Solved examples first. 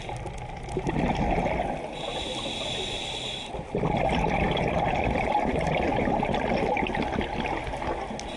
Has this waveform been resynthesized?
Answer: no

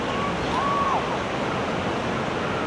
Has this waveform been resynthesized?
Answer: no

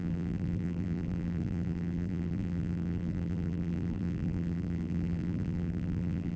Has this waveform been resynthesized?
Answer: yes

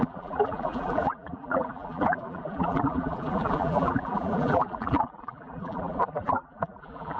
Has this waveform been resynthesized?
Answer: yes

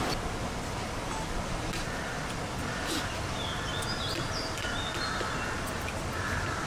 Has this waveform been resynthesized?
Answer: no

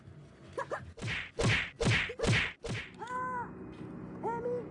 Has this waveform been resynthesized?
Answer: no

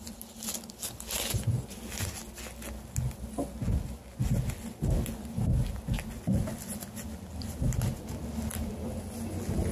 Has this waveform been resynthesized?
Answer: no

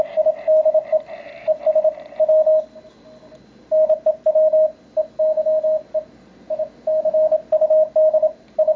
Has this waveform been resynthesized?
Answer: no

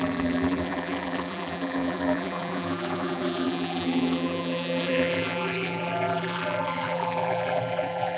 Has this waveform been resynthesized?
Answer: yes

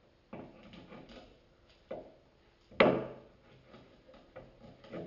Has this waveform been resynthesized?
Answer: no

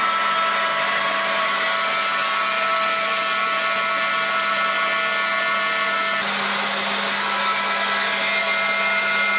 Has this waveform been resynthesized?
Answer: no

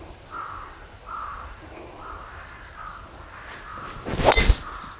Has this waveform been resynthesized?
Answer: no